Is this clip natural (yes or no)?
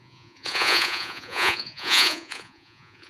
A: no